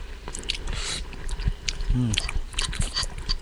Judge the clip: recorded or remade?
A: recorded